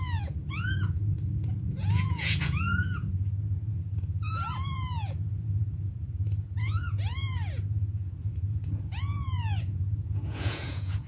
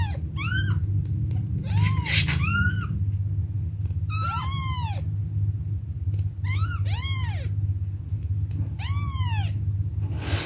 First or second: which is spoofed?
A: first